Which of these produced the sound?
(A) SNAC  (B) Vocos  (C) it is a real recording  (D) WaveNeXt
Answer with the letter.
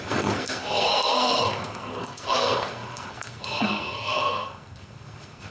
A